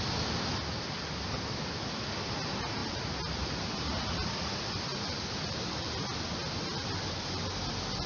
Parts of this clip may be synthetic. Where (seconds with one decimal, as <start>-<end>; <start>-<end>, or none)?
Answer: none

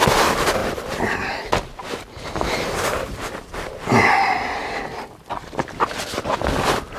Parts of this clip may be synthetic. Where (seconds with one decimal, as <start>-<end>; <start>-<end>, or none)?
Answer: 0.6-1.3